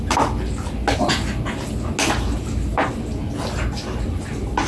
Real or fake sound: real